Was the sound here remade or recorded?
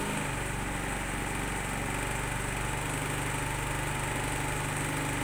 recorded